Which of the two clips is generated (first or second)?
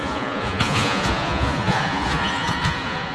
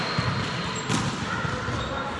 first